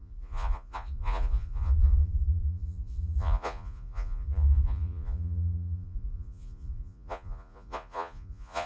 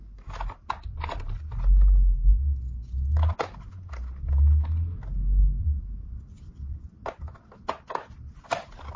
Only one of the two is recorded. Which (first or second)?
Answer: second